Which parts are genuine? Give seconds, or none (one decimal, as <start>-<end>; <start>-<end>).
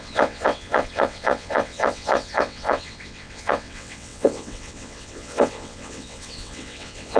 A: none